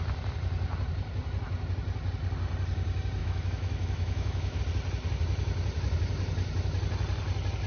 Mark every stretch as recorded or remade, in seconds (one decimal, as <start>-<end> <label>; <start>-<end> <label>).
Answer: 0.0-3.2 recorded; 3.2-4.6 remade; 4.6-7.7 recorded